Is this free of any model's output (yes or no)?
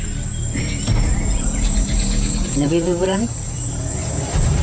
no